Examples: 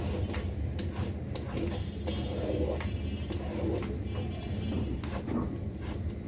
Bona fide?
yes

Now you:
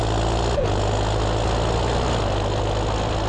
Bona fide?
yes